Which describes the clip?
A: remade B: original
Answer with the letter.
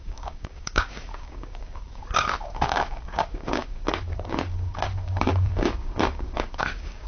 A